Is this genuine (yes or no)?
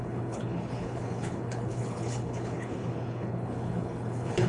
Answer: no